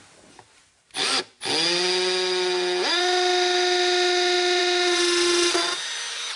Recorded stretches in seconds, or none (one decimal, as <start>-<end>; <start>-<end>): 0.0-6.4